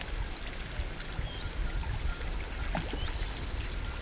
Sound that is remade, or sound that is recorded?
recorded